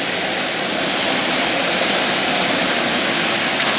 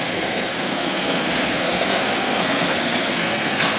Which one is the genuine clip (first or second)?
first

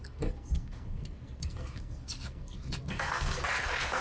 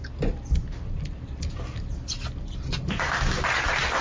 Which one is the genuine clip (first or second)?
second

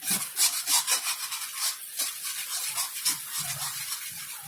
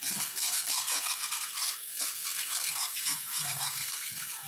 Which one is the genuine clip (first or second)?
first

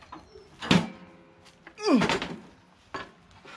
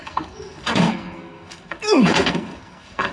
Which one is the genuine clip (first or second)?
first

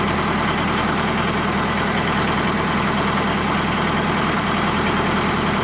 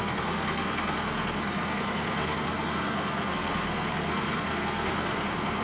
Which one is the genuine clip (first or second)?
first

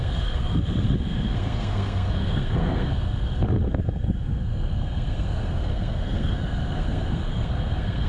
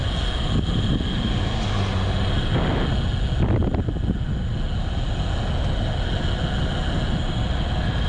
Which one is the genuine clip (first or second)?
second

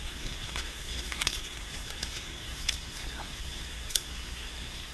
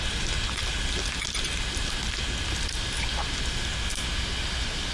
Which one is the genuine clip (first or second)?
second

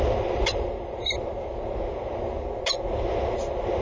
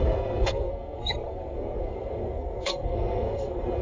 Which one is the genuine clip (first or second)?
first